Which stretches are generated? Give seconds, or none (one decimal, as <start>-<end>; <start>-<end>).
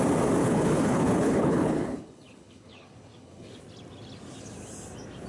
0.4-3.6